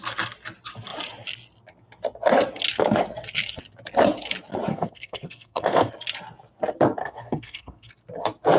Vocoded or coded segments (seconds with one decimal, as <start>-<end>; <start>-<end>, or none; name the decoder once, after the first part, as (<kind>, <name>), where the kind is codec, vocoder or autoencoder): 4.7-5.9 (codec, SNAC); 7.0-7.9